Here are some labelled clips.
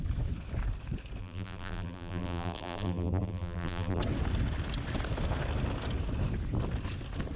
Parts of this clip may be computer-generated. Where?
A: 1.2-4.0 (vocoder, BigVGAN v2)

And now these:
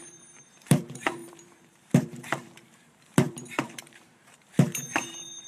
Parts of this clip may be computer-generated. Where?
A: 0.0-5.5 (vocoder, BigVGAN v2)

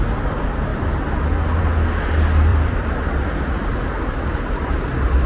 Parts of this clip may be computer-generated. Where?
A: 2.5-3.8 (vocoder, BigVGAN v2)

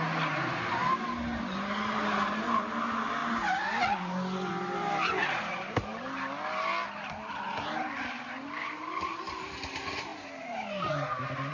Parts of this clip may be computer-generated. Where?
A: 5.2-6.0 (vocoder, BigVGAN v2)

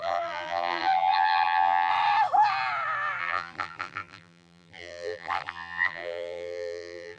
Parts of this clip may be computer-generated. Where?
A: 0.0-1.9 (vocoder, BigVGAN v2); 3.2-7.2

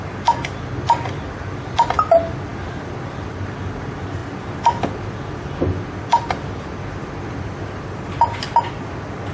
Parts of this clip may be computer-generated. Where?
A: none

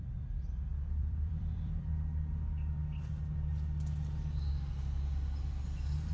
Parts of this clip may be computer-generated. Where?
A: 0.7-1.9 (vocoder, BigVGAN v2)